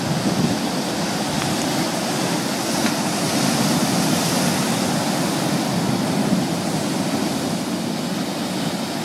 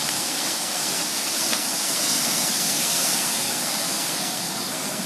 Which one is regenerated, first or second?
second